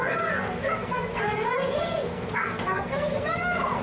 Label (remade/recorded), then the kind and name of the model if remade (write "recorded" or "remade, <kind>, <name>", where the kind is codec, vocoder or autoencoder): remade, codec, SNAC